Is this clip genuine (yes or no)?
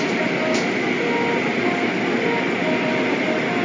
yes